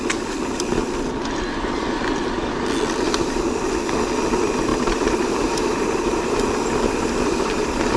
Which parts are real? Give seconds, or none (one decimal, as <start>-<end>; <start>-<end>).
0.0-4.7; 6.4-8.0